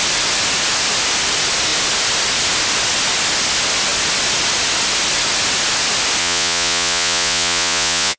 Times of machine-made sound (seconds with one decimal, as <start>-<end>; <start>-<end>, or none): 6.2-8.2